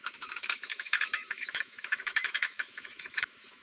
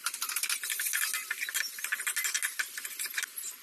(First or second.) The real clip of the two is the second